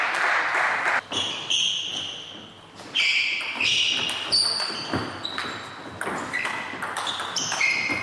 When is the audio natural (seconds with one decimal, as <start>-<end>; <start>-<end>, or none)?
0.0-8.0